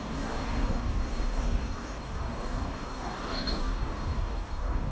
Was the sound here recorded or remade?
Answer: remade